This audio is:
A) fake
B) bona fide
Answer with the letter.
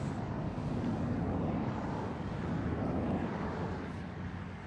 A